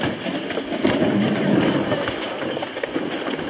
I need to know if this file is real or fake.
real